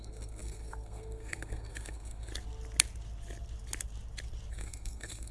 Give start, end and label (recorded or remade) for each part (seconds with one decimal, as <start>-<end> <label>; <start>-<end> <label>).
0.0-2.3 remade; 2.3-4.5 recorded; 4.5-5.3 remade